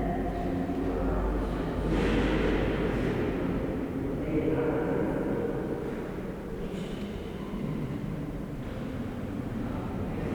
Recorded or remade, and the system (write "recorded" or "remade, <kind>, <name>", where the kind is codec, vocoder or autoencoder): recorded